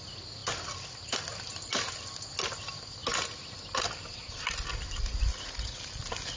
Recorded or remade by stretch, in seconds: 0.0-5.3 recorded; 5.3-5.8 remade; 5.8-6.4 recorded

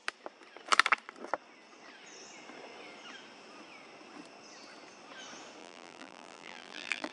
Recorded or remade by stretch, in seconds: 0.0-5.6 recorded; 5.6-7.1 remade

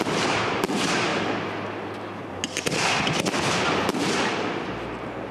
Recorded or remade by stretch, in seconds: 0.0-1.1 remade; 1.1-4.2 recorded; 4.2-5.3 remade

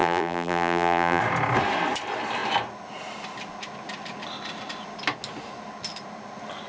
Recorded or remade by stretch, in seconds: 0.0-1.2 remade; 1.2-6.7 recorded

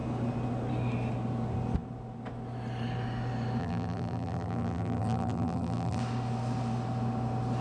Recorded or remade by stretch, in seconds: 0.0-3.6 recorded; 3.6-6.0 remade; 6.0-7.6 recorded

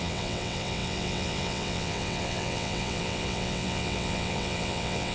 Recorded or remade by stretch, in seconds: 0.0-5.1 remade

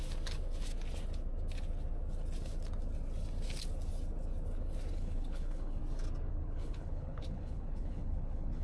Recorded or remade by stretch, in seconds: 0.0-4.9 recorded; 4.9-5.8 remade; 5.8-6.3 recorded; 6.3-8.6 remade